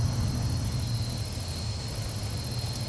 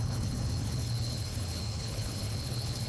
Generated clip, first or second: second